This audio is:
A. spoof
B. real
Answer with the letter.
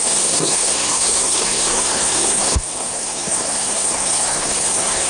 A